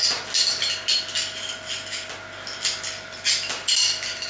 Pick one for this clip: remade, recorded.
recorded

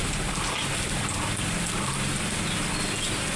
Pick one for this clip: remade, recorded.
recorded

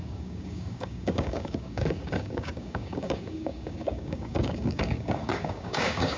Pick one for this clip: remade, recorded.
remade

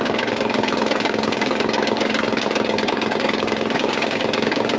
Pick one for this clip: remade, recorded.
remade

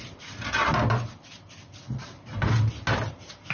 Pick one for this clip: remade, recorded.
recorded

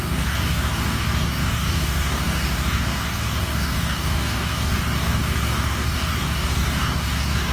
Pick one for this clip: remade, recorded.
remade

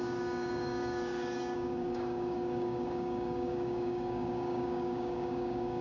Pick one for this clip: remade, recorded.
remade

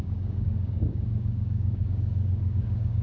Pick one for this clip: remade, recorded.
remade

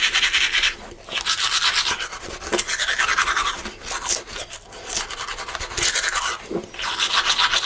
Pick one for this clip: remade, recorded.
recorded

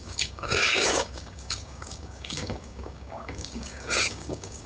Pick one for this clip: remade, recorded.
remade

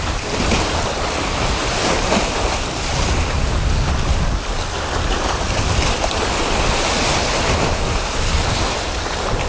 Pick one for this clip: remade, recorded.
recorded